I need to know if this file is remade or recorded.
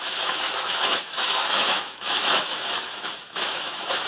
remade